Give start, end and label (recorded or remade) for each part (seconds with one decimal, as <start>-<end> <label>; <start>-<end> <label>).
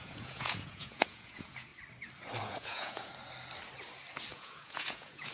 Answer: 0.0-1.7 remade; 1.7-2.4 recorded; 2.4-3.1 remade; 3.1-4.3 recorded; 4.3-5.3 remade